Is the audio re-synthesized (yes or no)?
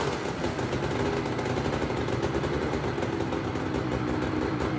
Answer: no